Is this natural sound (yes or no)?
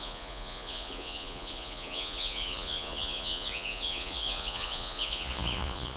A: no